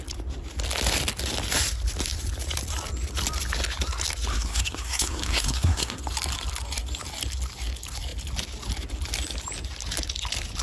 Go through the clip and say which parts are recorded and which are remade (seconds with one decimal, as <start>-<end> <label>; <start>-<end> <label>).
0.0-4.3 recorded; 4.3-6.0 remade; 6.0-10.6 recorded